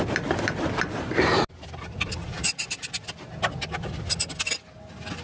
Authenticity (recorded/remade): recorded